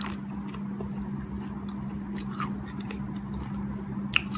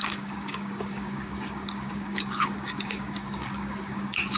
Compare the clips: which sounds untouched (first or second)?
first